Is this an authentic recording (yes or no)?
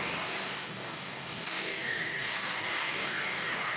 no